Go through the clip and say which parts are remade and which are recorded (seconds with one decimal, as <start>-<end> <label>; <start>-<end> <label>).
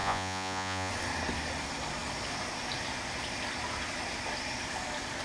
0.0-0.9 remade; 0.9-5.2 recorded